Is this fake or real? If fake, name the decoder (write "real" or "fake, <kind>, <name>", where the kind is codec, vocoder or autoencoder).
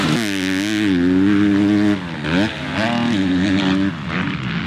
real